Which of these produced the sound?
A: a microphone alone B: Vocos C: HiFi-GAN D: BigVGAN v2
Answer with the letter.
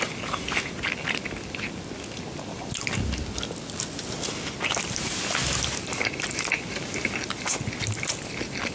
A